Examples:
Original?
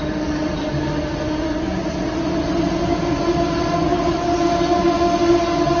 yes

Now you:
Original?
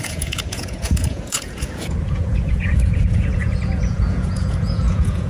no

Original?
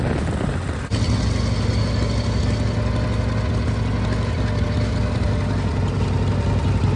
yes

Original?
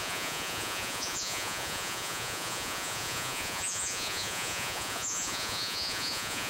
no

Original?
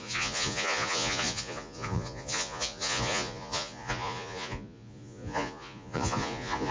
no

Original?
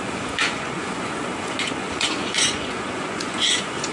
no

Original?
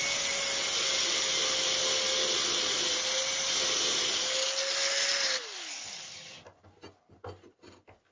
yes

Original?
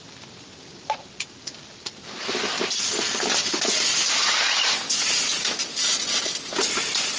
yes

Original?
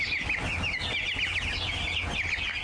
yes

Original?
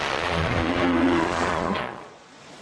no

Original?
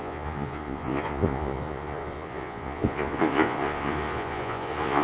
no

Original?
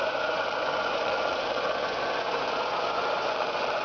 no